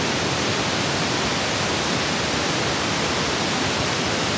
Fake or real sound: real